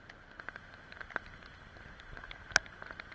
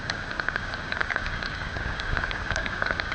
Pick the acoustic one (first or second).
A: first